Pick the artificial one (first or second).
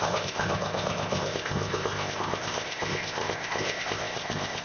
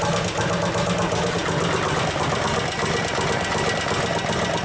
first